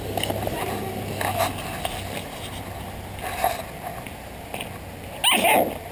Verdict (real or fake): real